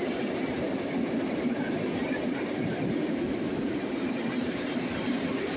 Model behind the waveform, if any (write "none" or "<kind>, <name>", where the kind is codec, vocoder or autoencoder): vocoder, BigVGAN v2